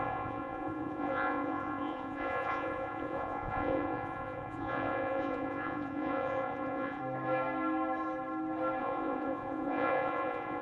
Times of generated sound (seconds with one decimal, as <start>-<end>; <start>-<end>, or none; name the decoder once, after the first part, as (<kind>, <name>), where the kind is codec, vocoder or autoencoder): 0.0-7.0 (vocoder, Vocos); 8.8-10.6